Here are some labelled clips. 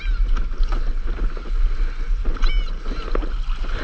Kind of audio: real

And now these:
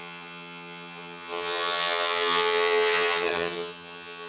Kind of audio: fake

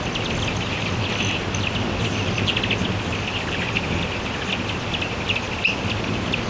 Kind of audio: real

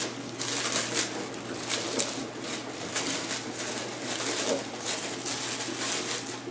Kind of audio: real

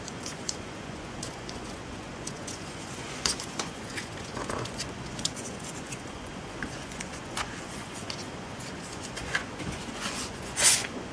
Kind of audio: fake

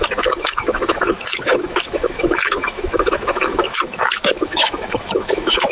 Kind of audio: fake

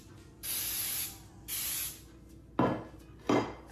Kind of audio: real